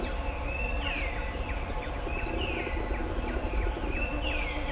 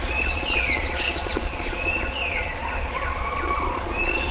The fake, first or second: second